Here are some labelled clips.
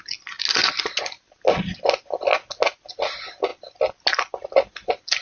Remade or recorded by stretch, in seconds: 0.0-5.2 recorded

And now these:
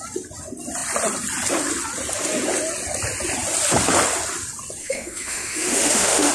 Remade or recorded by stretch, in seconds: 0.0-4.8 recorded; 4.8-6.3 remade

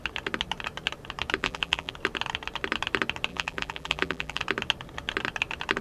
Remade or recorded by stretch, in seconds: 0.0-1.4 recorded; 1.4-1.9 remade; 1.9-3.3 recorded; 3.3-4.4 remade; 4.4-5.8 recorded